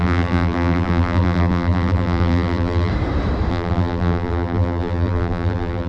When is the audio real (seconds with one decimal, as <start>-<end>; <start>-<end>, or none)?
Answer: 2.9-3.5